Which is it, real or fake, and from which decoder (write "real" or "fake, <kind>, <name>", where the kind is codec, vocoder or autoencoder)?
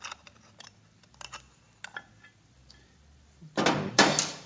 real